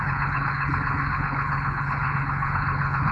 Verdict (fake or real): fake